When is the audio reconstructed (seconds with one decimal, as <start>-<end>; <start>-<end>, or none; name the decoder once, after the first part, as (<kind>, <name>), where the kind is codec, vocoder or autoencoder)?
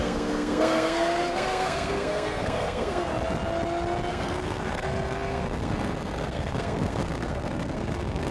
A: 0.0-3.1 (codec, SNAC); 4.1-8.3